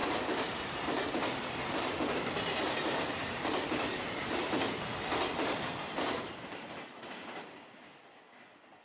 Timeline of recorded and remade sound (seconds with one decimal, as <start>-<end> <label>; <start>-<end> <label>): 0.0-4.4 remade; 4.4-5.3 recorded; 5.3-7.2 remade; 7.2-8.8 recorded